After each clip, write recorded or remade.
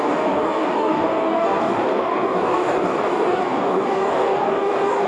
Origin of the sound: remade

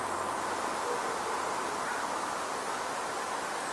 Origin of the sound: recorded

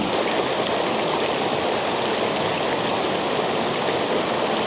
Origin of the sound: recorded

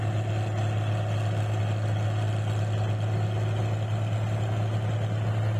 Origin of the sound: recorded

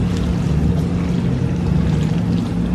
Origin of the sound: recorded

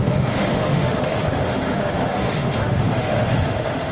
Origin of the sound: remade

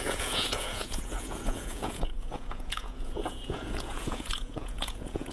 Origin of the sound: remade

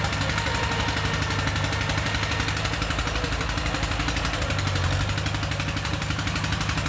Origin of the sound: recorded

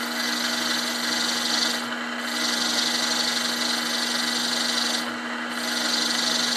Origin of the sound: recorded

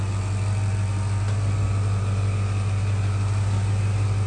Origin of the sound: recorded